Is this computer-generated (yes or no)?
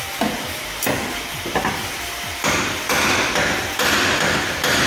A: no